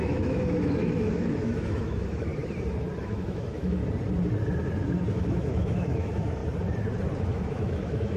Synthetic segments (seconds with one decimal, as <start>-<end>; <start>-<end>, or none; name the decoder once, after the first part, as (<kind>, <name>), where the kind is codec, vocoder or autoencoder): 0.0-2.3 (autoencoder, DAC-VAE); 3.0-3.8; 5.1-6.4; 7.2-8.2